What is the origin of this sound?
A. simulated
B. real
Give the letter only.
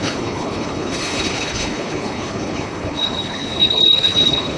A